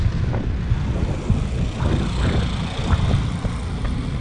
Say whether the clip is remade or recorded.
recorded